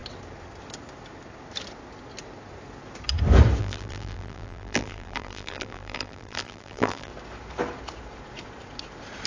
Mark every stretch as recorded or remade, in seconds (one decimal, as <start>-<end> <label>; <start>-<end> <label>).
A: 0.0-3.6 recorded; 3.6-7.1 remade; 7.1-9.3 recorded